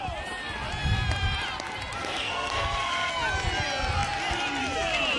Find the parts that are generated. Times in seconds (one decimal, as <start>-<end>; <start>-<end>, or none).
2.0-3.1